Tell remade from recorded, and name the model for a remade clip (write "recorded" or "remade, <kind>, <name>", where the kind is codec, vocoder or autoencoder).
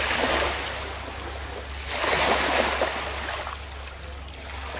recorded